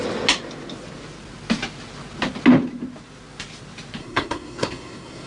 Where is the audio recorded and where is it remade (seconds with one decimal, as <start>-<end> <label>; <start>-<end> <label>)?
0.0-4.0 recorded; 4.0-5.3 remade